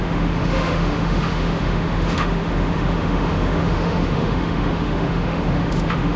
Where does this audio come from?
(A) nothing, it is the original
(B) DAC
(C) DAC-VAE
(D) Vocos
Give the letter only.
C